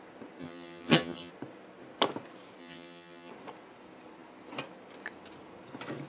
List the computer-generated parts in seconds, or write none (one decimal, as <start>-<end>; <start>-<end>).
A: 0.4-1.3; 2.6-3.3